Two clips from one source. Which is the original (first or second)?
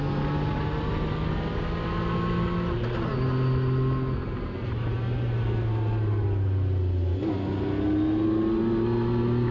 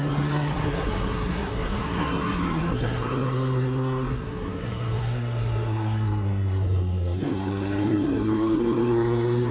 first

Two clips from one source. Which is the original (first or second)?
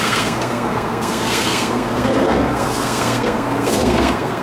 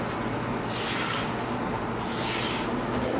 second